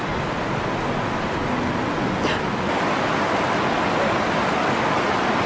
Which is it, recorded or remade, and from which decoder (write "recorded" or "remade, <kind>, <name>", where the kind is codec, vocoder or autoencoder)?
recorded